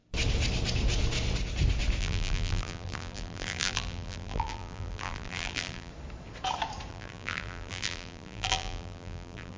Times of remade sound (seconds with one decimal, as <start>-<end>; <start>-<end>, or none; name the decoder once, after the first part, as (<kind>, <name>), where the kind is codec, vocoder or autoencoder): 2.0-5.9 (vocoder, BigVGAN v2); 6.9-9.6